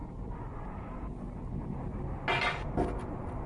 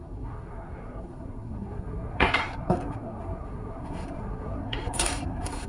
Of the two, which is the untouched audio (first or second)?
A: first